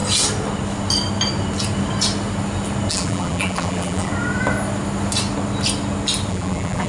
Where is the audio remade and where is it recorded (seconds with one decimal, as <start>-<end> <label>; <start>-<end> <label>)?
0.0-2.9 recorded; 2.9-4.1 remade; 4.1-6.3 recorded; 6.3-6.9 remade